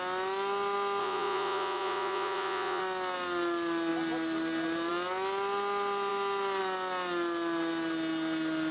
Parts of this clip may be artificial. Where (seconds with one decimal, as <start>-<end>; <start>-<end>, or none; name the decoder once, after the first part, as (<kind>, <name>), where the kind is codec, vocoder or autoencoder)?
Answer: 1.0-2.8 (vocoder, Vocos)